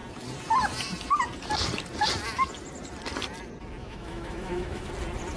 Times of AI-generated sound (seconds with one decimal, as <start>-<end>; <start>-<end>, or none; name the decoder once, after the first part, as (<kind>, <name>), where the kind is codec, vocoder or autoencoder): 3.8-4.9 (autoencoder, DAC-VAE)

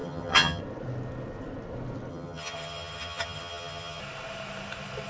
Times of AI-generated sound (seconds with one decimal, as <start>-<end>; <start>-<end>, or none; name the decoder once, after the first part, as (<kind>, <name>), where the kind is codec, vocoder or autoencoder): 0.0-0.6 (vocoder, HiFi-GAN); 2.1-4.0